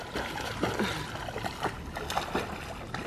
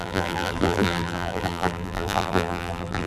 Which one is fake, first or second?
second